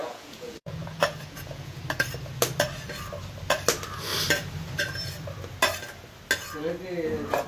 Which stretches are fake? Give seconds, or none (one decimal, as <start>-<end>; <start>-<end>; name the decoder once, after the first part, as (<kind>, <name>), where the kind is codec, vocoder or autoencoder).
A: 0.0-1.8 (vocoder, Vocos)